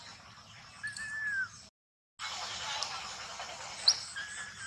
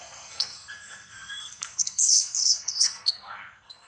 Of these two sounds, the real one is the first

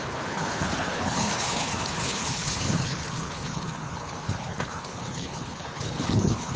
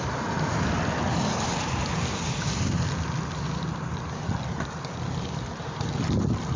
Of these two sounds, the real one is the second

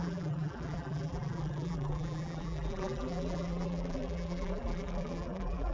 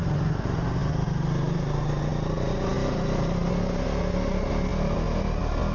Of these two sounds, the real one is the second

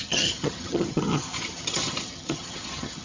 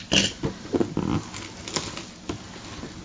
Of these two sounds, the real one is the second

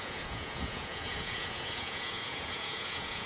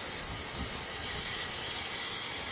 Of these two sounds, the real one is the second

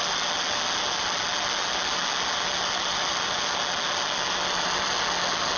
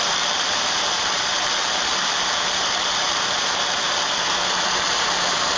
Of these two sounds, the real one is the first